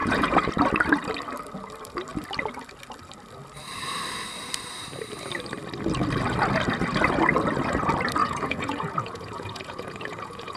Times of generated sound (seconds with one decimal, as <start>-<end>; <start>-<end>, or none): 0.0-0.5; 8.2-10.6